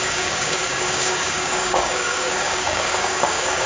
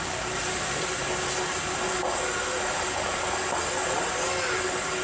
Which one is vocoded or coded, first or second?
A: first